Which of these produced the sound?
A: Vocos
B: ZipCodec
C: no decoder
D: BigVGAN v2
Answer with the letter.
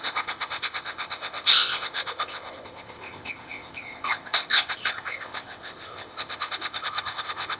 B